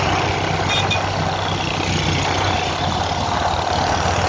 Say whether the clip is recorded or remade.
recorded